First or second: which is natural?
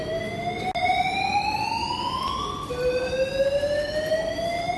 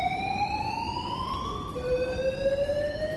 first